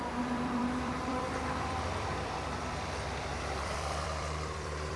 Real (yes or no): no